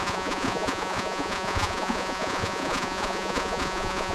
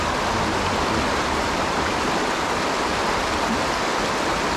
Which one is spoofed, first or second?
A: first